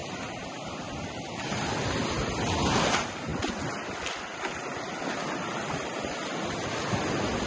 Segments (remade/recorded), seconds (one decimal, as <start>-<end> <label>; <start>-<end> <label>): 0.0-7.5 recorded